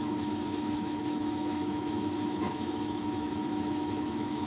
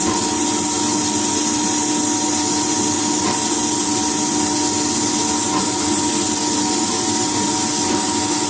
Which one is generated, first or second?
first